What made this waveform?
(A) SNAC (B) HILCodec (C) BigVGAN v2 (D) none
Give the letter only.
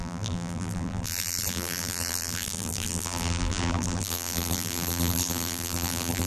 C